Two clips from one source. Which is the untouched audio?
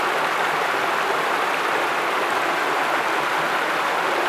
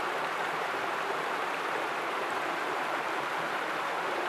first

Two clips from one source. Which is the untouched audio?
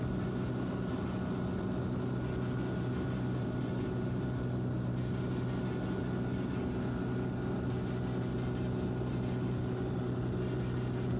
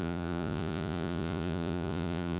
first